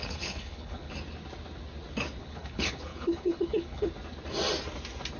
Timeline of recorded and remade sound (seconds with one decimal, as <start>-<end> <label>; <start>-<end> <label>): 0.0-0.9 remade; 0.9-2.2 recorded; 2.2-3.9 remade; 3.9-5.2 recorded